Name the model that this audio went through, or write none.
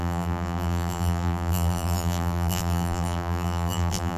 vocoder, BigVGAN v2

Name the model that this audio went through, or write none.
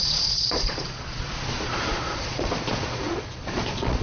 vocoder, Vocos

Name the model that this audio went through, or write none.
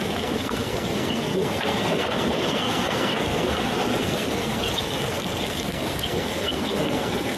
codec, SNAC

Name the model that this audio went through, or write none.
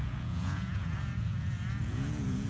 vocoder, Vocos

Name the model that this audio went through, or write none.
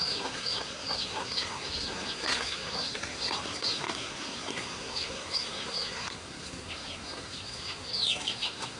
codec, SNAC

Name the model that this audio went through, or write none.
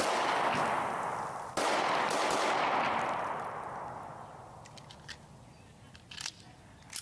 none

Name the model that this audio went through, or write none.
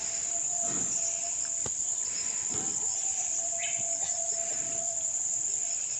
none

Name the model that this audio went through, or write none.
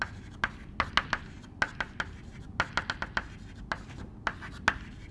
none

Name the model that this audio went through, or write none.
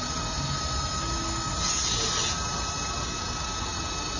none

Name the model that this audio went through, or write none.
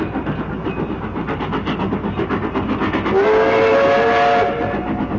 none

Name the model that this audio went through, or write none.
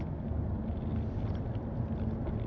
none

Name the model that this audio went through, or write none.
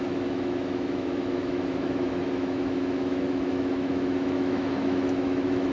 autoencoder, DAC-VAE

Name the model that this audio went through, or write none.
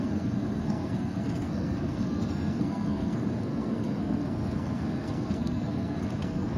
codec, SNAC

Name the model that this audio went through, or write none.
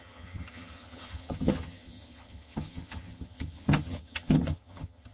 vocoder, HiFi-GAN